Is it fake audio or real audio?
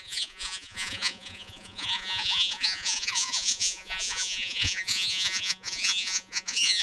fake